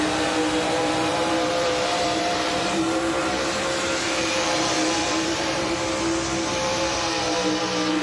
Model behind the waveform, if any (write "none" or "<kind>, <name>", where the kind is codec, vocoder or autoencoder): vocoder, BigVGAN v2